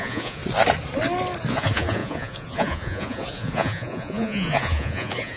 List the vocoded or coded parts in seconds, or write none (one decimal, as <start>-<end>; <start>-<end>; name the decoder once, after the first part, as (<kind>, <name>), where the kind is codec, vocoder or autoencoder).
0.0-0.4 (vocoder, Vocos); 1.5-5.4